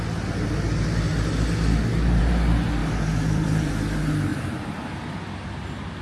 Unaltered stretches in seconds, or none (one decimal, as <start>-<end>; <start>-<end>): 0.0-2.8; 3.7-4.3; 4.9-6.0